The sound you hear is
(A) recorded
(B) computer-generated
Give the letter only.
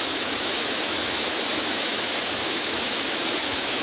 B